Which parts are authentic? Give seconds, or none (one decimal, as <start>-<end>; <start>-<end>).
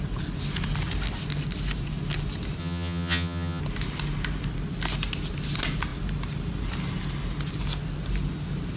0.0-2.6; 3.6-8.8